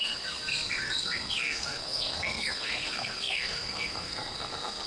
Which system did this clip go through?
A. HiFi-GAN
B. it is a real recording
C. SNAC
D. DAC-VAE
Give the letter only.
C